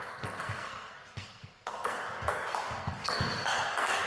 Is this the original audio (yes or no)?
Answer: no